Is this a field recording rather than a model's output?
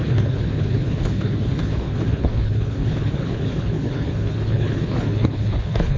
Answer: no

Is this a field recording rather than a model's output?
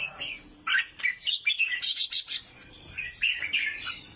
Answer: no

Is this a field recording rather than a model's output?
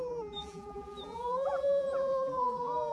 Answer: no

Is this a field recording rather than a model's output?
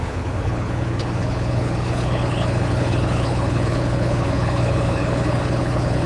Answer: no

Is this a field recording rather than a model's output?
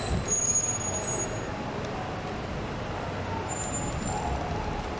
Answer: yes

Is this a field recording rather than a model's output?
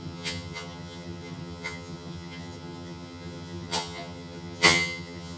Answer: no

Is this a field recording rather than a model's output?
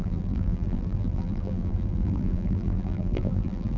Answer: no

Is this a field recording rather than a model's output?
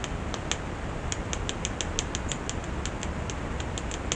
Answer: yes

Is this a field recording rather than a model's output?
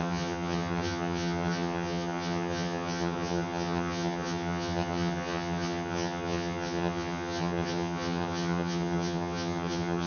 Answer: no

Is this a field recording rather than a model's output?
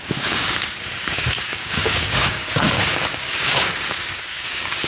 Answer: no